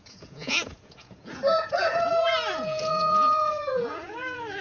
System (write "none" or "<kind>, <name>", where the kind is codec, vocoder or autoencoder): vocoder, Vocos